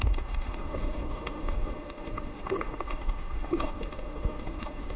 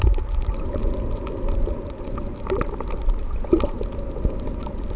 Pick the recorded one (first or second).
second